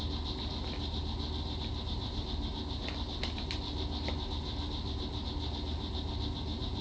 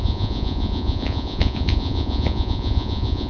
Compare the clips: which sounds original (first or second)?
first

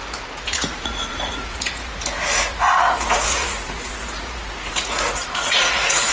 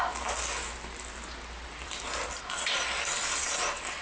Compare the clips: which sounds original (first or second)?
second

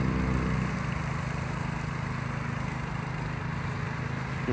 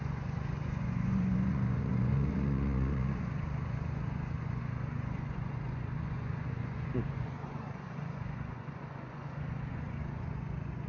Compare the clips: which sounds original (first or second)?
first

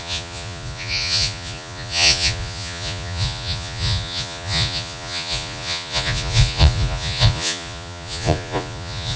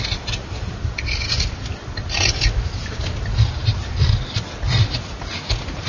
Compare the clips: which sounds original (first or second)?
second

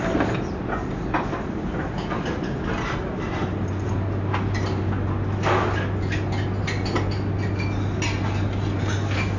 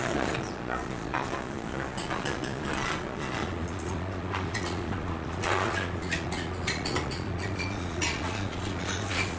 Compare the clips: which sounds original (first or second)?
first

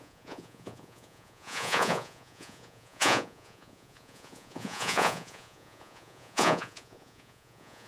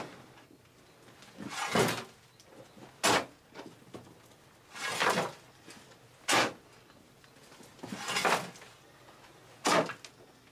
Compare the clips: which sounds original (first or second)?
second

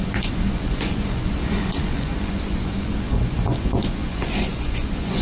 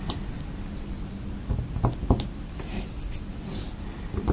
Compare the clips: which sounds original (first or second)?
second